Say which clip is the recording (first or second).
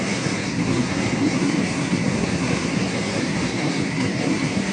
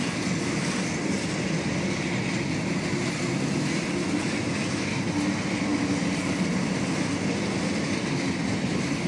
second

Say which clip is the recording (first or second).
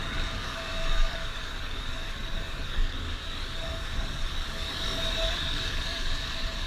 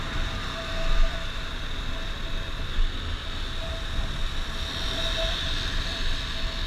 second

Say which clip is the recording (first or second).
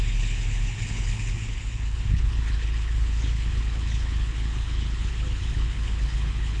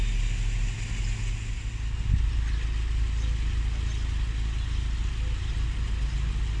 second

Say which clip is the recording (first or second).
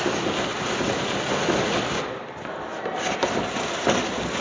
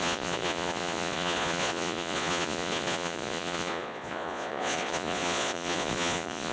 first